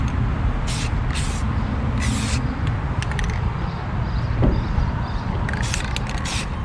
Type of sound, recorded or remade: recorded